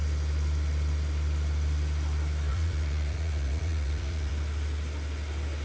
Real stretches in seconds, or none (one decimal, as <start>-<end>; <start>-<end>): 0.0-2.5; 4.3-5.6